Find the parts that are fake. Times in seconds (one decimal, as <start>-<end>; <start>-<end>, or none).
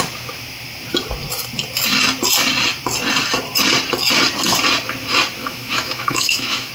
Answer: 5.4-6.7